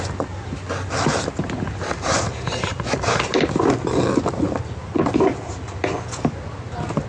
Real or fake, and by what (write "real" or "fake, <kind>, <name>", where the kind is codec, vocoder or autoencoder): real